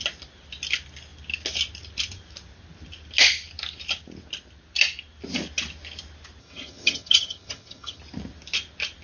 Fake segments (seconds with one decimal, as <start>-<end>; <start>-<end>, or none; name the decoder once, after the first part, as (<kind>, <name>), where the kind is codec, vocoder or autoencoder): 6.4-8.0 (vocoder, HiFi-GAN)